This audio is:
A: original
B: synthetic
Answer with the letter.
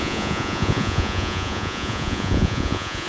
B